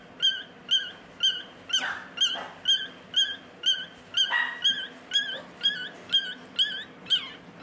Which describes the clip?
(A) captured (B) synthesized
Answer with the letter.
A